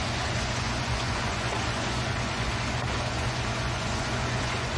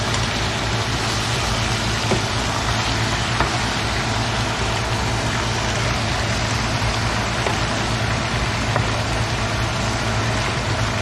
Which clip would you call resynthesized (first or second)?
first